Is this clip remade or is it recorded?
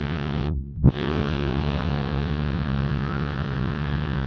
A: remade